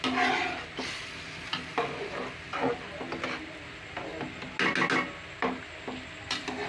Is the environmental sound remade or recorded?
recorded